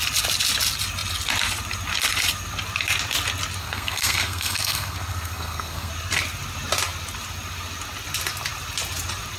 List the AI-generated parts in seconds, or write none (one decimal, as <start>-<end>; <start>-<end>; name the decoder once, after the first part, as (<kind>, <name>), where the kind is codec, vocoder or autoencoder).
3.6-5.9 (codec, SNAC)